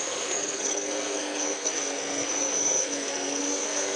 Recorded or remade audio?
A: remade